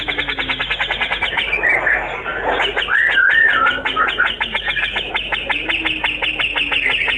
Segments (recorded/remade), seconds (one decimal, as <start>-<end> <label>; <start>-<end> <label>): 0.0-7.2 recorded